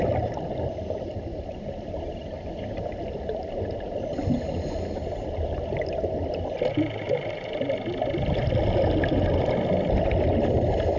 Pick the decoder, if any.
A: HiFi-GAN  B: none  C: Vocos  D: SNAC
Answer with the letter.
B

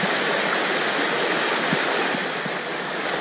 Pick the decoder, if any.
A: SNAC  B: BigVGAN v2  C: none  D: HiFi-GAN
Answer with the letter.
C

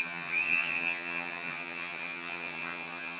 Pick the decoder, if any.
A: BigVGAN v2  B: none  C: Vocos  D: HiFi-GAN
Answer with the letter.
D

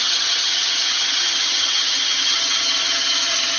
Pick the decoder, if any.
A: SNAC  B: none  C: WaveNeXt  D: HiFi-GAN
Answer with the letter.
D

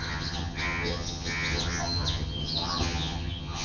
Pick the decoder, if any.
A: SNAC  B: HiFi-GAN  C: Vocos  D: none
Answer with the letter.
B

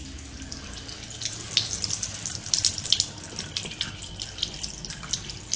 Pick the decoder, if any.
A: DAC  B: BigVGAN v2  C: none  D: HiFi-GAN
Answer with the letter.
C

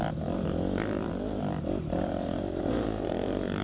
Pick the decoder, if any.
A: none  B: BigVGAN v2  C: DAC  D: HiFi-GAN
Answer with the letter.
A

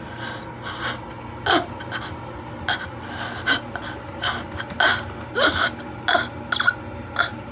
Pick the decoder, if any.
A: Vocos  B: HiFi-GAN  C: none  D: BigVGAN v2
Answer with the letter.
C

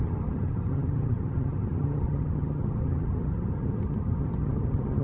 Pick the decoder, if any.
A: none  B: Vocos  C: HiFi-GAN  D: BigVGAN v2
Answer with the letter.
C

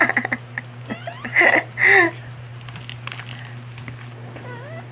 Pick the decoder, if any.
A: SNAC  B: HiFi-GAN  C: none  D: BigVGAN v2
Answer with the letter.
C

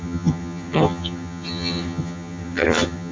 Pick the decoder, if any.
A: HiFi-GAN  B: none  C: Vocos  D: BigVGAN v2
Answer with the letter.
A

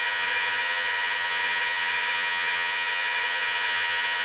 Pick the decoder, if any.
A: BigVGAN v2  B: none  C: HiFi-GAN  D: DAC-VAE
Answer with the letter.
C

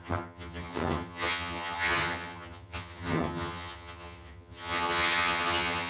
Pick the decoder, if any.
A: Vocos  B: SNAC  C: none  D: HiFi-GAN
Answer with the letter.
D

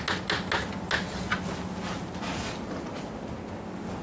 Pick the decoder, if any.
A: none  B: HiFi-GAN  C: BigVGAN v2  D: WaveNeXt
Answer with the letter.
A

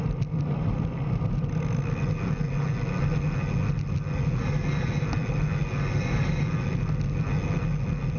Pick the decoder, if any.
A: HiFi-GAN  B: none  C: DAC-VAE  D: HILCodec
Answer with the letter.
B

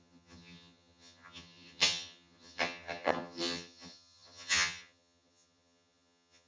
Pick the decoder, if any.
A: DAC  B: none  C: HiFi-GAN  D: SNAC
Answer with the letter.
C